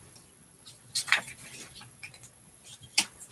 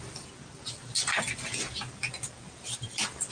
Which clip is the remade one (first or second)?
first